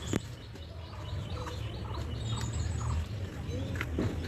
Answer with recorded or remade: recorded